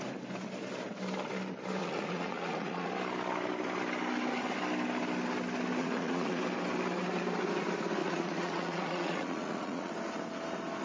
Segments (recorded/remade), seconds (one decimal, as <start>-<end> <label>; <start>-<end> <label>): 0.0-1.8 recorded; 1.8-2.9 remade; 2.9-5.8 recorded; 5.8-6.4 remade; 6.4-8.0 recorded; 8.0-9.9 remade; 9.9-10.8 recorded